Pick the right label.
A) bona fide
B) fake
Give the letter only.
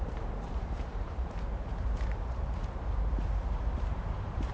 B